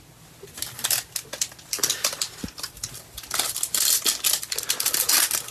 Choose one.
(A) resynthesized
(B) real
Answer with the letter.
B